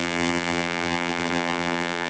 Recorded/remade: remade